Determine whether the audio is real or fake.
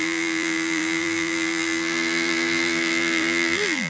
fake